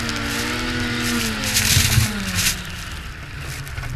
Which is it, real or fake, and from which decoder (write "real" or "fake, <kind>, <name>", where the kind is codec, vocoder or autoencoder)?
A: real